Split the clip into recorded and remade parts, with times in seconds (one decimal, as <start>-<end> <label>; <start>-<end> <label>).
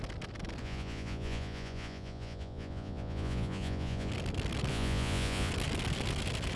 0.0-0.6 recorded; 0.6-4.1 remade; 4.1-4.7 recorded; 4.7-5.5 remade; 5.5-6.6 recorded